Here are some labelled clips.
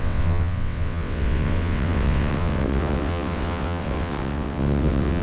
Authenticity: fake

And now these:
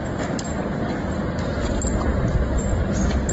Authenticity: real